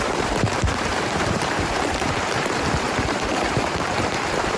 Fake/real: fake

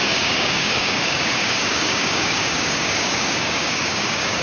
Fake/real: fake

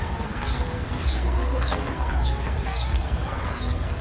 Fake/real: fake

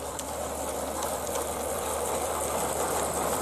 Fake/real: fake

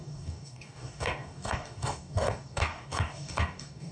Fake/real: fake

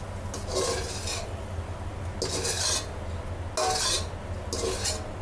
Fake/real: real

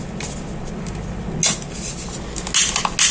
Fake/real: real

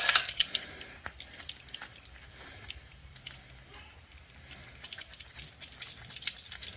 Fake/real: fake